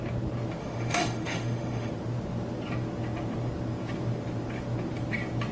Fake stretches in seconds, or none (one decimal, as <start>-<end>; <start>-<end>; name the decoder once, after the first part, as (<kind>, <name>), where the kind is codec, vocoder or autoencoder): 0.6-1.9 (autoencoder, DAC-VAE)